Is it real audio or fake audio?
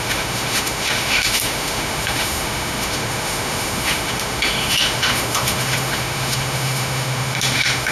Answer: fake